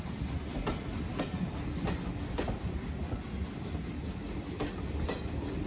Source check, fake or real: real